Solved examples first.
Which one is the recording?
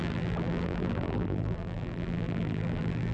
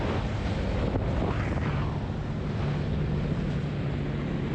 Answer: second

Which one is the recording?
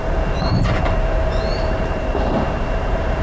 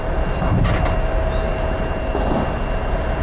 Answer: second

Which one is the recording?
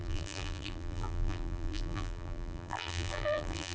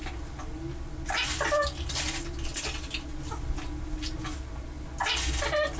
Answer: second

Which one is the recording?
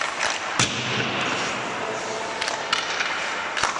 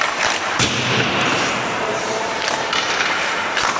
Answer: first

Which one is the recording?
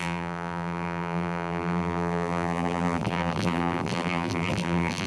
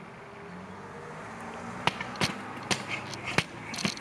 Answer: second